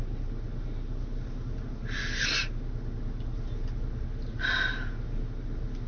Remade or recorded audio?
recorded